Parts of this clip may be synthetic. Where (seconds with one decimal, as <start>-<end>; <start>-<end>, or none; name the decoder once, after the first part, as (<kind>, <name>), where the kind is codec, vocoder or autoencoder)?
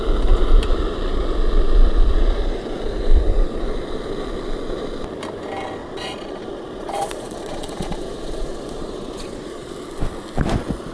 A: 5.8-9.7 (vocoder, Vocos)